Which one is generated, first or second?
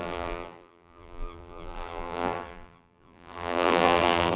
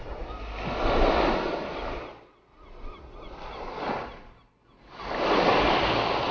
first